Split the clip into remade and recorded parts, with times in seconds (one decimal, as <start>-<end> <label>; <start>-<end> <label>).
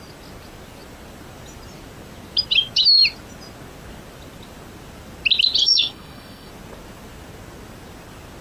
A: 0.0-5.6 recorded; 5.6-6.5 remade; 6.5-8.4 recorded